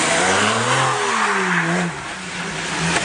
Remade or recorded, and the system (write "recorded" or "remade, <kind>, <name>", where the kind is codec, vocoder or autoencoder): recorded